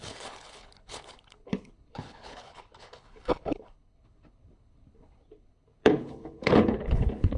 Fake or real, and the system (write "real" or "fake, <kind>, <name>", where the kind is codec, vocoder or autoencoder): fake, codec, HILCodec